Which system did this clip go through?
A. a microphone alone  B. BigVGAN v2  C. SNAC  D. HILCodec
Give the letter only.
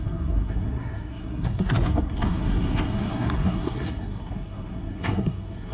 C